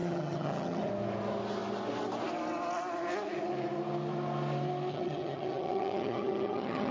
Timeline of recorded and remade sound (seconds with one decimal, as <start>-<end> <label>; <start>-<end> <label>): 0.0-0.9 remade; 0.9-4.9 recorded; 4.9-6.9 remade